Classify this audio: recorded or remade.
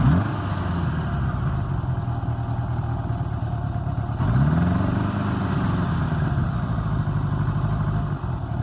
recorded